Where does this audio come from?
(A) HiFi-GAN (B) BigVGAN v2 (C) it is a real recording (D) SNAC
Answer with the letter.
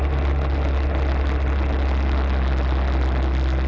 C